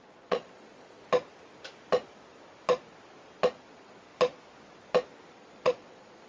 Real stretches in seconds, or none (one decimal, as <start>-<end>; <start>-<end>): 1.0-3.6; 4.1-5.3